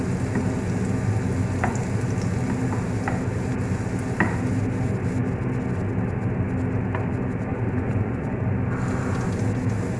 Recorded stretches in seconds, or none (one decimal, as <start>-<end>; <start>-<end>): 0.0-7.5; 8.4-10.0